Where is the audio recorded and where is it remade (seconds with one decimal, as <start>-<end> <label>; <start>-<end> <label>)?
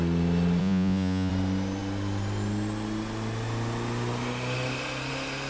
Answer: 0.0-0.6 recorded; 0.6-1.3 remade; 1.3-5.5 recorded